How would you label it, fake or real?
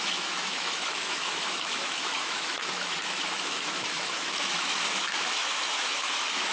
fake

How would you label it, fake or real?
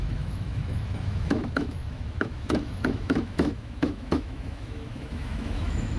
fake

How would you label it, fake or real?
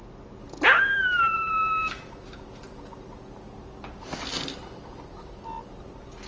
real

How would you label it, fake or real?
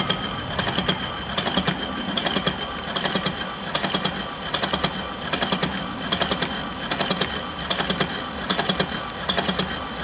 real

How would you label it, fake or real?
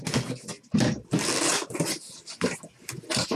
real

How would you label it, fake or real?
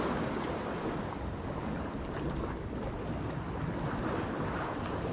real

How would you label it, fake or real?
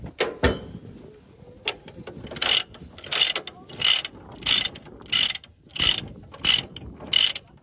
real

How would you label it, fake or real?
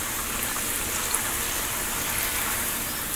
real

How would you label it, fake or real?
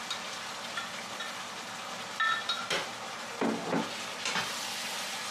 real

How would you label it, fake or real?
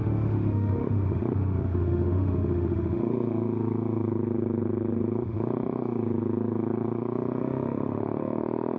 fake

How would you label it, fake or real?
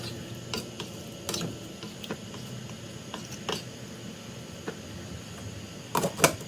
real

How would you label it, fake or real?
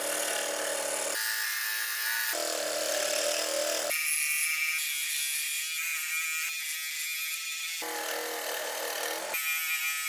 real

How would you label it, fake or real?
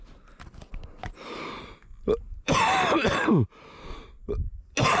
real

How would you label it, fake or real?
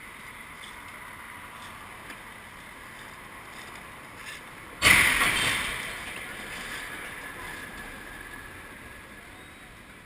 real